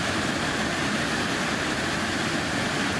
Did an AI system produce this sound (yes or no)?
no